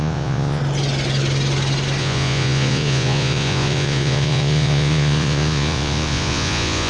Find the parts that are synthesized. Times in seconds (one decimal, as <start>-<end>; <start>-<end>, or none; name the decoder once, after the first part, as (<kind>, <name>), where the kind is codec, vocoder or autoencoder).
0.0-0.6 (vocoder, Vocos); 2.0-6.9